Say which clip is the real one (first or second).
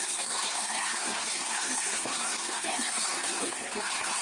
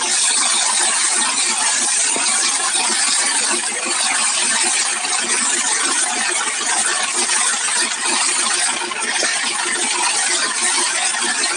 second